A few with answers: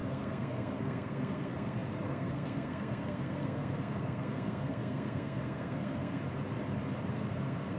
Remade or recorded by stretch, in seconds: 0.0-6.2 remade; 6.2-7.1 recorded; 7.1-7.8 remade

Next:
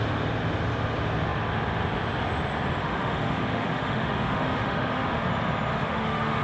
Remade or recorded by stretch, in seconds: 0.0-2.8 recorded; 2.8-5.3 remade; 5.3-5.7 recorded; 5.7-6.4 remade

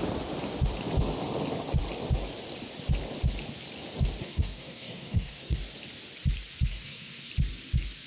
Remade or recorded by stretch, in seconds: 0.0-4.2 recorded; 4.2-5.6 remade; 5.6-6.7 recorded; 6.7-7.3 remade; 7.3-8.1 recorded